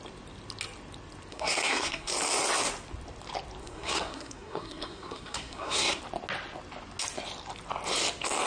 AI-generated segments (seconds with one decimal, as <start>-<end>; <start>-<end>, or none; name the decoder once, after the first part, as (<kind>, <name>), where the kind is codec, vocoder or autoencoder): 1.3-2.1 (codec, SNAC); 3.6-6.0